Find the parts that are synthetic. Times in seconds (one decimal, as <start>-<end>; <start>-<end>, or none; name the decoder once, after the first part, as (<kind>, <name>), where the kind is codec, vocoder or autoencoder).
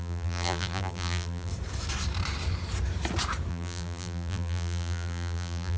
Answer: 0.0-1.5 (vocoder, BigVGAN v2); 3.5-5.8